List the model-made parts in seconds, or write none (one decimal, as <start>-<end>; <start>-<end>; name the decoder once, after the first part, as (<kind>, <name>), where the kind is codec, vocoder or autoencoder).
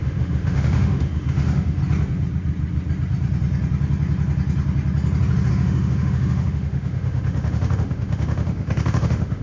0.0-1.8 (autoencoder, DAC-VAE); 5.5-9.4